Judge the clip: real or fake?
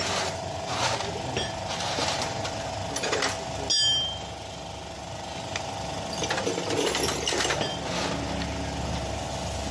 real